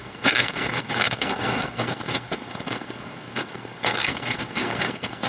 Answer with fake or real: fake